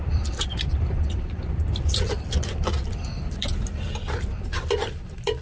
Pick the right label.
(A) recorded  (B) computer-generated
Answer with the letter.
B